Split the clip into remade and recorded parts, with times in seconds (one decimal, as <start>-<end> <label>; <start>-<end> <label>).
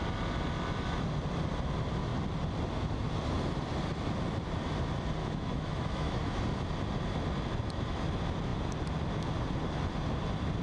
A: 0.0-5.2 recorded; 5.2-6.4 remade; 6.4-10.6 recorded